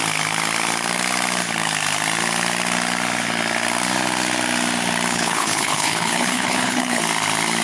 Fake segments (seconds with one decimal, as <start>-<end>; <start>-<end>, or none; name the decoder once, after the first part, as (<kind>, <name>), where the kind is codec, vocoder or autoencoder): 5.1-7.0 (codec, HILCodec)